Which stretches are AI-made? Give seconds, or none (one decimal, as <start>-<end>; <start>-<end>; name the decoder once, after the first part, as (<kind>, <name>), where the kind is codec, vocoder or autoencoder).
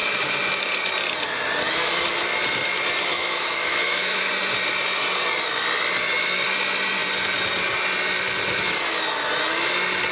3.1-4.3 (autoencoder, DAC-VAE)